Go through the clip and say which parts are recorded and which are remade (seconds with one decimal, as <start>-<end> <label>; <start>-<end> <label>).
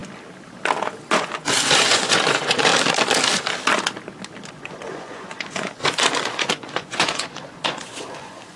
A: 0.0-1.1 recorded; 1.1-2.7 remade; 2.7-4.5 recorded; 4.5-8.6 remade